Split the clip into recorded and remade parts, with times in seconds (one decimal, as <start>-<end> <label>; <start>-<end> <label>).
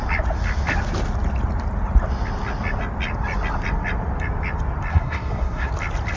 0.0-4.9 recorded; 4.9-5.7 remade; 5.7-6.2 recorded